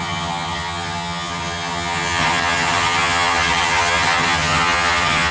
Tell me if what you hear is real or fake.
fake